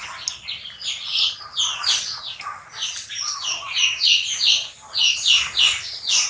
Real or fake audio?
real